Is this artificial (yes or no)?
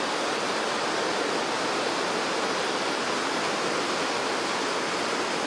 no